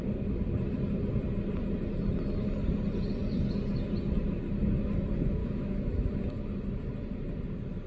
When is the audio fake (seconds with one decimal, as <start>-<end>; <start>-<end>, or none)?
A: 5.4-6.4